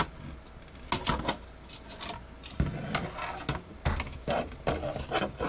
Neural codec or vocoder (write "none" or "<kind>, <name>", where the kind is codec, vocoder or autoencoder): none